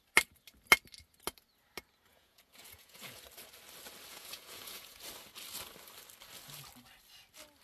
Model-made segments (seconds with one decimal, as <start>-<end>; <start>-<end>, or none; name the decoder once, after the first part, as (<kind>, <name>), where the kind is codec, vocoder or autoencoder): 2.1-3.2 (vocoder, Vocos); 4.1-5.0